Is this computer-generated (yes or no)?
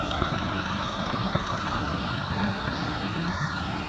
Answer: yes